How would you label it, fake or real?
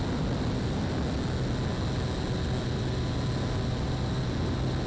real